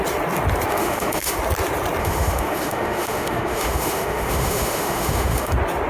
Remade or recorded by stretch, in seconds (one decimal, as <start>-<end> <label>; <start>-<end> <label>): 0.0-0.7 recorded; 0.7-1.3 remade; 1.3-2.0 recorded; 2.0-5.5 remade; 5.5-5.9 recorded